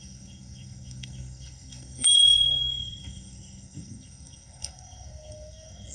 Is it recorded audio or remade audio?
remade